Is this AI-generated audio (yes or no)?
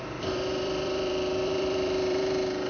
yes